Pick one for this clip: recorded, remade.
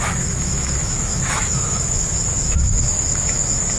remade